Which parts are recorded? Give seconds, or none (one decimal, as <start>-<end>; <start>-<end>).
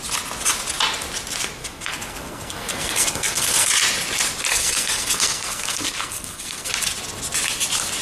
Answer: 0.0-1.6; 3.7-4.5; 6.7-8.0